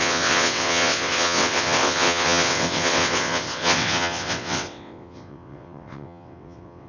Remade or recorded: remade